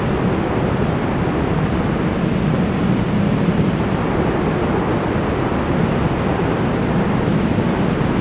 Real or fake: real